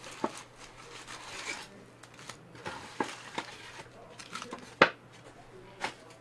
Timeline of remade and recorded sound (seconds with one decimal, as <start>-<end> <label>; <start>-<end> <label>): 0.0-2.6 recorded; 2.6-3.8 remade; 3.8-4.2 recorded; 4.2-4.7 remade; 4.7-6.2 recorded